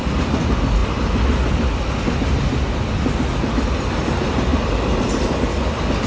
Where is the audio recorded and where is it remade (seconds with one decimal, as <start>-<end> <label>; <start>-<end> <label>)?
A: 0.0-6.1 recorded